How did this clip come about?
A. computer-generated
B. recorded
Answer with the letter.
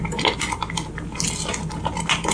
B